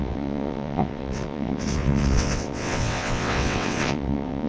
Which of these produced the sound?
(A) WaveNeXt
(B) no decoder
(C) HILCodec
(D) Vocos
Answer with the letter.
A